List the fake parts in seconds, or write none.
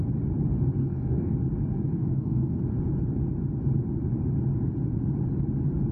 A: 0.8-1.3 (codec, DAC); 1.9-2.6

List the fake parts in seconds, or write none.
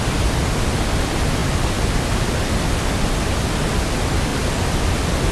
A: 4.3-4.8 (vocoder, BigVGAN v2)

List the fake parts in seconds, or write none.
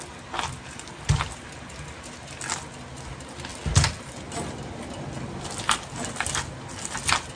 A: none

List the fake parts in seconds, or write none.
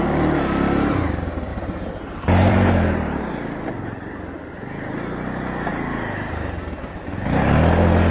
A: 1.5-3.2 (vocoder, BigVGAN v2)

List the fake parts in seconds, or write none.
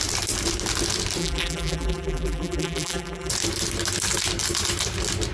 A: 1.2-3.3 (vocoder, BigVGAN v2)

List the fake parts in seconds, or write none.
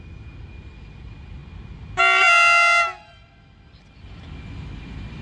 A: none